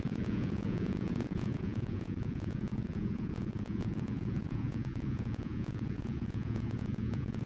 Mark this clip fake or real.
fake